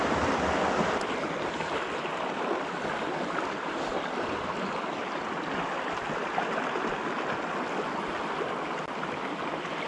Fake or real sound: real